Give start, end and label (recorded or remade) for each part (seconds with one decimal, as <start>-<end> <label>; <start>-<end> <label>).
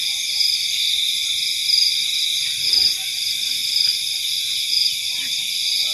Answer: 0.0-5.9 remade